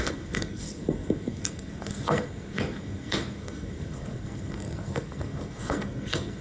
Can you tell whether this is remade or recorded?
remade